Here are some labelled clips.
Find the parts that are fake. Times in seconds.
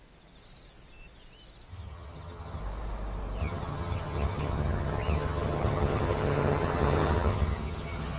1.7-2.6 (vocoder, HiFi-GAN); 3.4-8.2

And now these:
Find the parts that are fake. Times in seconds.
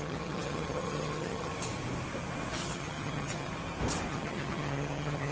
0.0-1.5 (vocoder, HiFi-GAN); 2.5-3.5; 4.1-5.3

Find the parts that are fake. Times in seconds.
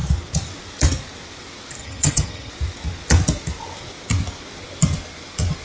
1.8-2.5 (vocoder, HiFi-GAN)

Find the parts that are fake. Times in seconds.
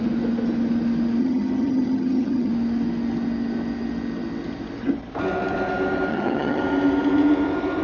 1.2-2.5 (vocoder, HiFi-GAN); 6.1-6.6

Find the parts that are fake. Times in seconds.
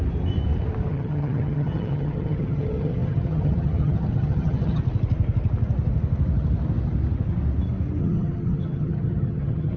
0.9-4.8 (vocoder, HiFi-GAN); 8.0-9.8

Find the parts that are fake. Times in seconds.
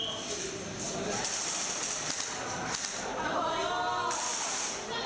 none